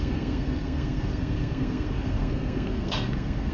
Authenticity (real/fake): fake